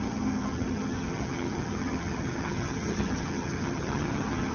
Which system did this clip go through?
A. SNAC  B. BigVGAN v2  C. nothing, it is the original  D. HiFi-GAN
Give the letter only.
D